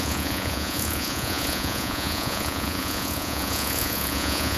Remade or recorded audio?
remade